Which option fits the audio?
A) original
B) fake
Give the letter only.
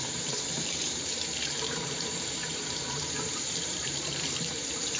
B